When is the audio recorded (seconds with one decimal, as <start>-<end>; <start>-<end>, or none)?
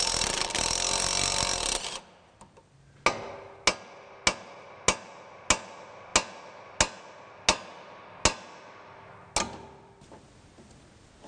0.0-11.3